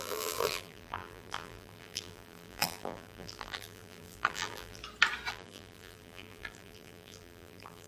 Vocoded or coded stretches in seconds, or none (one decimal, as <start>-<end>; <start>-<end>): 0.0-4.8; 5.3-7.9